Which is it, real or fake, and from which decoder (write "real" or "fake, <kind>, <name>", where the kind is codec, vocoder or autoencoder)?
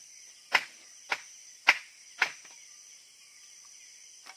real